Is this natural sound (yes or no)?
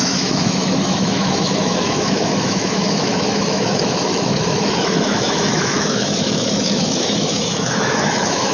no